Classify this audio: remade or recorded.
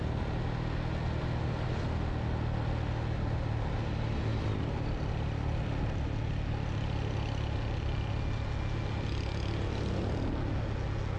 recorded